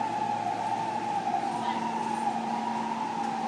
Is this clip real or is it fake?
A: real